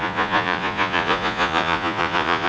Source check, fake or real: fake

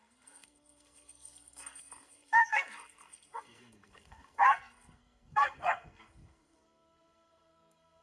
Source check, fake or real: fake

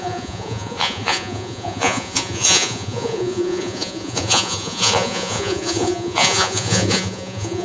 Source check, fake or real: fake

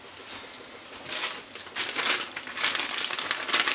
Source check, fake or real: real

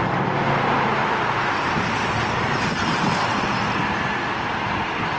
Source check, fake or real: real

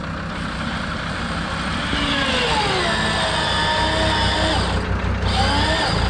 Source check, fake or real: real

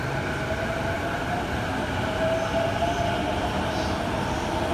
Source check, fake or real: real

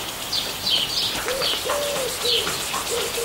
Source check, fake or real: real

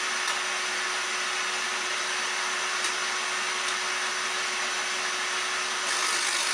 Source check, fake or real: real